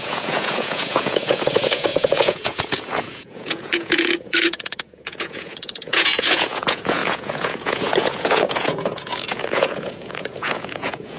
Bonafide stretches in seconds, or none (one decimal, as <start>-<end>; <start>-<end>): none